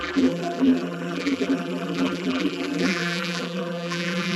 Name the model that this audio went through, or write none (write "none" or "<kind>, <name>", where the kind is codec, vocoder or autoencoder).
vocoder, BigVGAN v2